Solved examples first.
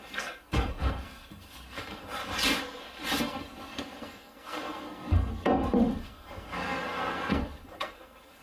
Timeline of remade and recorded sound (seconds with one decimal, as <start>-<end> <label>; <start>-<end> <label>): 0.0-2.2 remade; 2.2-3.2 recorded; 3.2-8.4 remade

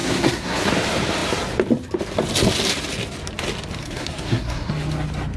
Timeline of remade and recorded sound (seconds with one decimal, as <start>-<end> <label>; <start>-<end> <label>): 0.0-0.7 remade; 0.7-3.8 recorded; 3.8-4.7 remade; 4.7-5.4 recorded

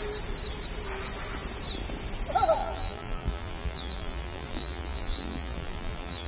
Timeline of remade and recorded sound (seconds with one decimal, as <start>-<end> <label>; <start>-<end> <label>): 0.0-2.6 recorded; 2.6-6.3 remade

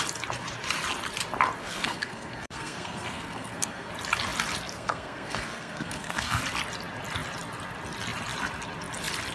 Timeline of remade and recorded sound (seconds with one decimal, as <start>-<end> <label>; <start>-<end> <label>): 0.0-1.6 recorded; 1.6-3.9 remade; 3.9-4.7 recorded; 4.7-6.4 remade; 6.4-9.3 recorded